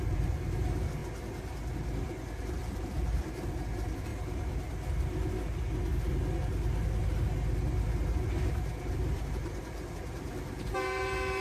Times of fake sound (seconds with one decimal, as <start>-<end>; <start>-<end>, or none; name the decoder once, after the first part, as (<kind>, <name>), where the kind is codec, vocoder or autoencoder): 0.0-1.0 (vocoder, BigVGAN v2); 2.5-4.1; 8.9-11.4